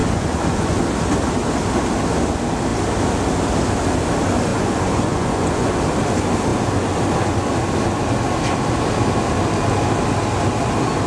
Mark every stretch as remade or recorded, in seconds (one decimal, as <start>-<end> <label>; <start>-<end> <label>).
0.0-0.8 remade; 0.8-4.5 recorded; 4.5-5.7 remade; 5.7-11.1 recorded